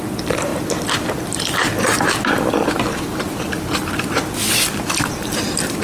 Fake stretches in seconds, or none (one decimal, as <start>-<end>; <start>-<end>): 0.0-0.5; 3.8-5.8